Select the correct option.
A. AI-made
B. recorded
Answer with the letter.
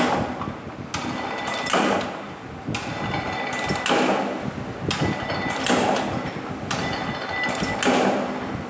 B